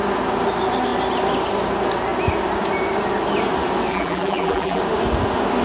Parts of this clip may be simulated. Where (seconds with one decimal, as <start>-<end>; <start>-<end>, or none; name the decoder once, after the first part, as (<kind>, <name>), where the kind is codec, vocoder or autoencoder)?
3.9-4.8 (vocoder, BigVGAN v2)